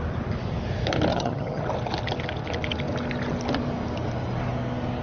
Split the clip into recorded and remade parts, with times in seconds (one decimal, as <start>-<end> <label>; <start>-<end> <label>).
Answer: 0.0-1.1 recorded; 1.1-1.6 remade; 1.6-5.0 recorded